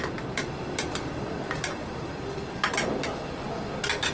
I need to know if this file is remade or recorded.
recorded